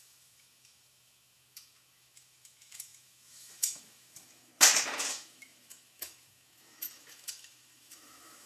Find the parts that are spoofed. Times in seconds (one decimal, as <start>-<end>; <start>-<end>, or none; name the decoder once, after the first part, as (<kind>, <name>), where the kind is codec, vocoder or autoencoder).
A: 0.0-4.5 (autoencoder, DAC-VAE); 5.1-8.5